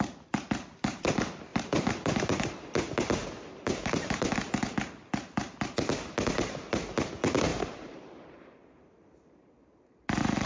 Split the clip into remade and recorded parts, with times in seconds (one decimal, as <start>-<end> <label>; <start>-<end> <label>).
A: 0.0-1.5 recorded; 1.5-4.3 remade; 4.3-7.5 recorded; 7.5-10.5 remade